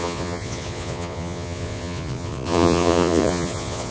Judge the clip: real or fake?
fake